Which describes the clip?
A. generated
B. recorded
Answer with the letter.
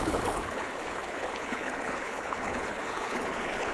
A